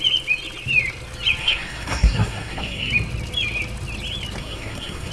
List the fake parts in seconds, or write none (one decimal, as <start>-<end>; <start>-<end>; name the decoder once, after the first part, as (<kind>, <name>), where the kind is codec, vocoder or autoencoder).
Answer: 1.4-2.9 (codec, SNAC); 4.4-5.1